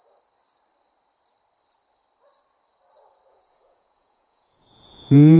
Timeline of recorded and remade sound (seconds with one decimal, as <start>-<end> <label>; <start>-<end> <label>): 0.0-3.3 recorded; 3.3-5.4 remade